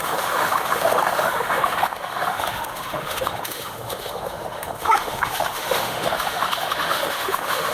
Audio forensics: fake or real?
fake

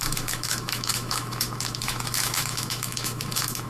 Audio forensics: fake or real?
fake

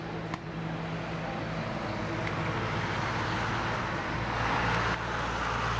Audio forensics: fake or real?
real